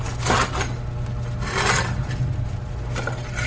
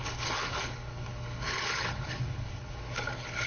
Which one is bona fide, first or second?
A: first